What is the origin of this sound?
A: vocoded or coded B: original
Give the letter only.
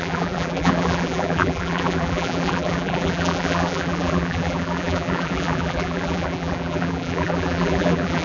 A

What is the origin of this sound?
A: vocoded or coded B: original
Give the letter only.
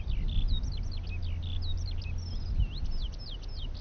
B